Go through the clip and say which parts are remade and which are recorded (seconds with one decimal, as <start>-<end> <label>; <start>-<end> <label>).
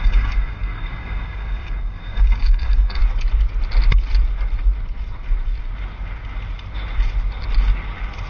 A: 0.0-3.0 remade; 3.0-8.3 recorded